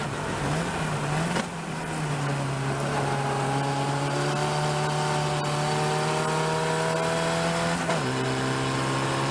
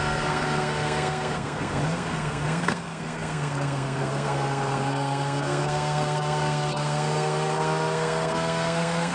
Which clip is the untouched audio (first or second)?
first